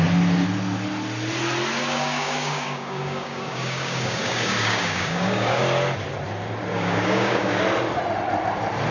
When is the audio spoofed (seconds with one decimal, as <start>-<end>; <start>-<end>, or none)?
1.8-5.6; 6.7-7.6